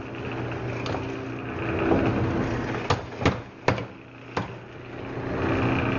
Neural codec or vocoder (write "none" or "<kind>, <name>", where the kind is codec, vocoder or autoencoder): none